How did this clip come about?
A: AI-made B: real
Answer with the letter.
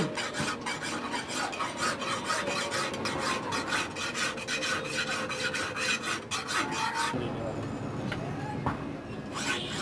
B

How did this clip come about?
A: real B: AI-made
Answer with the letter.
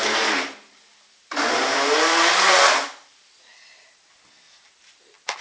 A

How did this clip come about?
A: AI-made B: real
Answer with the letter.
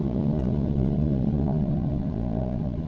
A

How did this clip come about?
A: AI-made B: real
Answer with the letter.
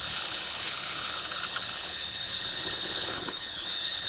A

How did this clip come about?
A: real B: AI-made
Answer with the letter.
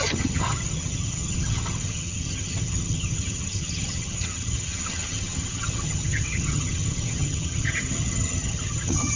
B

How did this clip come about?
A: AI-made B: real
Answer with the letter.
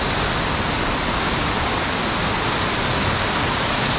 B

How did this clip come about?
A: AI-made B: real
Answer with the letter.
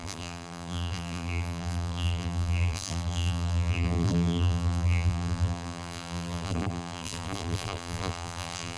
A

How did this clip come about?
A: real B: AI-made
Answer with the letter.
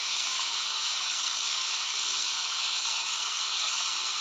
B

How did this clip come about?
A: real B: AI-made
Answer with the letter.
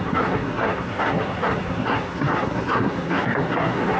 B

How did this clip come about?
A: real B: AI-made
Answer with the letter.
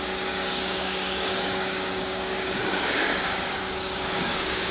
B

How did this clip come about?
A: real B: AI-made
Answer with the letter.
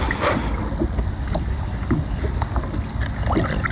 A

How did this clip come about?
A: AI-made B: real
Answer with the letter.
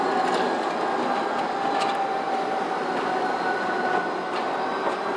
B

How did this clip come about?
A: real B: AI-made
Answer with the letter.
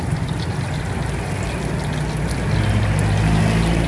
A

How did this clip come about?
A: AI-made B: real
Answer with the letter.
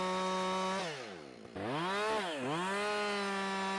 B